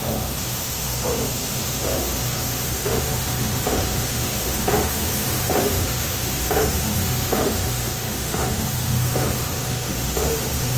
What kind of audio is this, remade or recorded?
remade